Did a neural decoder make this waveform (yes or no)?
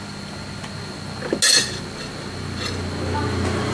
no